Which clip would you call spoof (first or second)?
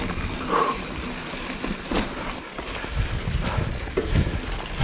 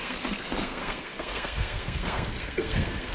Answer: second